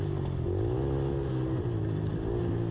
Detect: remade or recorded recorded